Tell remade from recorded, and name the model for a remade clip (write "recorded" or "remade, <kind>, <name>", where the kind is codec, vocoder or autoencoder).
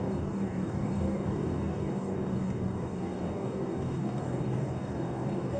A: remade, codec, DAC